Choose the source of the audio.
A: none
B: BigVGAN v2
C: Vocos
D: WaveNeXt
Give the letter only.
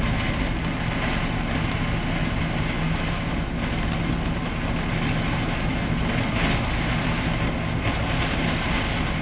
A